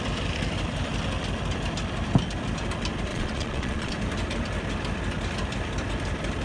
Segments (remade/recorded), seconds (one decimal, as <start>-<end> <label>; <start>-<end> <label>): 0.0-3.1 recorded; 3.1-3.9 remade; 3.9-6.4 recorded